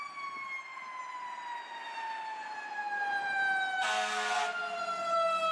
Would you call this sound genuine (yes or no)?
yes